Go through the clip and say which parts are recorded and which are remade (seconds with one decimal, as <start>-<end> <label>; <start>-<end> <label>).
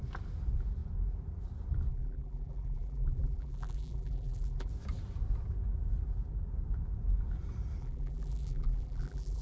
0.0-1.9 recorded; 1.9-4.7 remade; 4.7-7.8 recorded; 7.8-9.4 remade